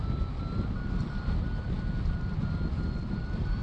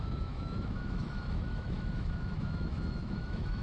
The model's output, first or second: second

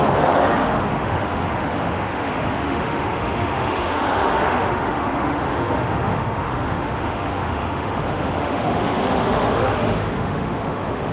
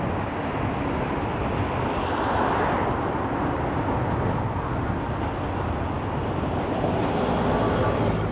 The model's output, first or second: first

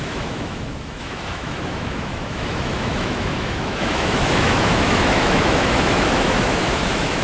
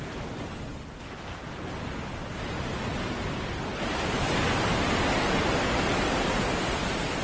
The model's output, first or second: first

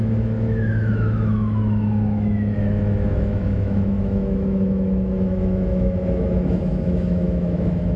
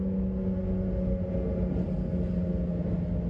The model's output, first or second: first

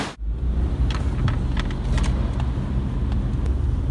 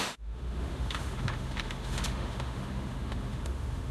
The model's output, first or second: second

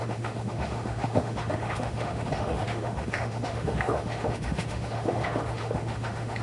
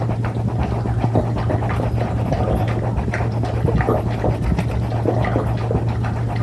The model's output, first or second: first